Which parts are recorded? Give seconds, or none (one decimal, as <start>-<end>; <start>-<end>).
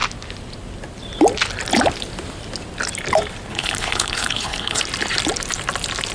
0.0-3.5; 4.8-6.1